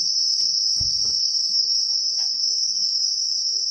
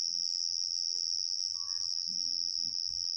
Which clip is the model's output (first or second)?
second